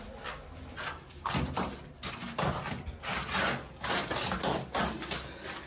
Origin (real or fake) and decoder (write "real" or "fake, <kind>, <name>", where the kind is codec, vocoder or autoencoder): real